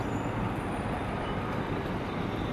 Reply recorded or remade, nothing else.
recorded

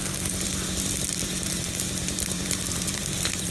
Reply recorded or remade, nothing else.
recorded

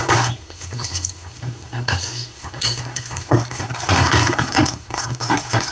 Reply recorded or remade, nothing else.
remade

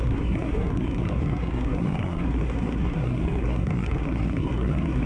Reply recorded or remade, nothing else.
remade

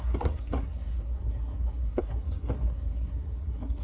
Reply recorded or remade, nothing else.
remade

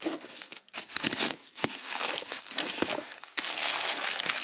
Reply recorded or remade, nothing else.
remade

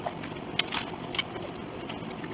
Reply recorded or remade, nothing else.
recorded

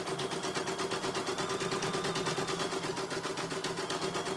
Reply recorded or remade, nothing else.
recorded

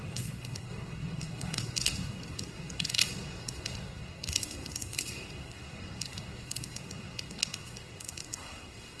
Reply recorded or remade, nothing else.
remade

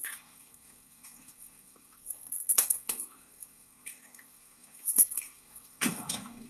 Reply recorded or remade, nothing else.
remade